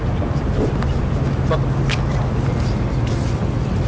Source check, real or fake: real